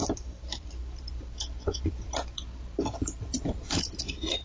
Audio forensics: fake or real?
fake